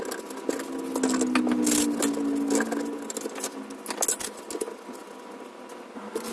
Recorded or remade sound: recorded